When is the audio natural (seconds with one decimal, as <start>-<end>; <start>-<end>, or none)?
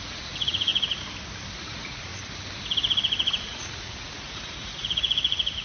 0.7-1.6; 2.1-3.3